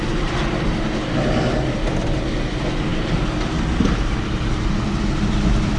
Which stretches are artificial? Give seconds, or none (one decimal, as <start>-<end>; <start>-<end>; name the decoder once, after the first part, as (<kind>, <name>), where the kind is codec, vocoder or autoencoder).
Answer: none

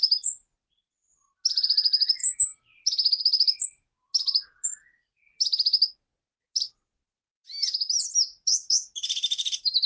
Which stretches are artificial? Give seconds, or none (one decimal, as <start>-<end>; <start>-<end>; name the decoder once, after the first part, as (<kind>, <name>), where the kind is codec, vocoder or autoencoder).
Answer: none

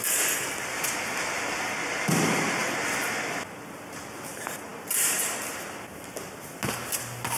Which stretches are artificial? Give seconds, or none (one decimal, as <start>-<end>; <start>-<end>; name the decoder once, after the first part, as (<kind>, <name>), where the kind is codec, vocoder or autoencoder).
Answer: none

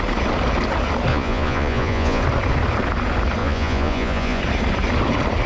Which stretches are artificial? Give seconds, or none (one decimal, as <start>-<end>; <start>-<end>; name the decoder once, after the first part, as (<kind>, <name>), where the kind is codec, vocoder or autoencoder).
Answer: 1.1-2.2 (vocoder, Vocos); 3.4-4.4